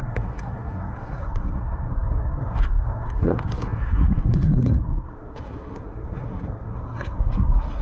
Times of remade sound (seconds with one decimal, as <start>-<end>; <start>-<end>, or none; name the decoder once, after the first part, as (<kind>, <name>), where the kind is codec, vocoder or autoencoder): 0.0-7.8 (codec, SNAC)